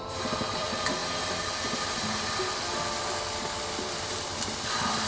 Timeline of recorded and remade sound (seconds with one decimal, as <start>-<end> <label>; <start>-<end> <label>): 0.0-1.0 remade; 1.0-3.8 recorded; 3.8-5.1 remade